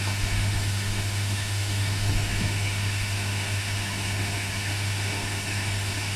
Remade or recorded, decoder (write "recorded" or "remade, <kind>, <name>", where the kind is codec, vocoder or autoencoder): remade, autoencoder, DAC-VAE